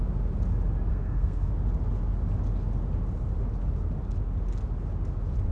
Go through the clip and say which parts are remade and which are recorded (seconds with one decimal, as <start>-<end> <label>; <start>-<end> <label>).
0.0-0.9 recorded; 0.9-1.5 remade; 1.5-5.5 recorded